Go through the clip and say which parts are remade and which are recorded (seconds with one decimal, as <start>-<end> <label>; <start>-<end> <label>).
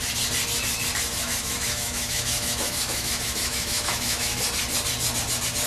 0.0-1.1 recorded; 1.1-4.4 remade; 4.4-5.7 recorded